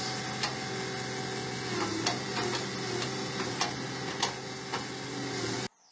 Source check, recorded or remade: recorded